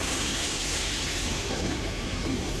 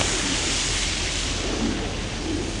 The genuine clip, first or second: second